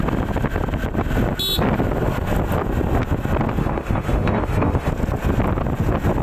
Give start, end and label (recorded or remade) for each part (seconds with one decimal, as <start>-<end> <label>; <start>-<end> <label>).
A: 0.0-3.6 recorded; 3.6-4.9 remade; 4.9-6.2 recorded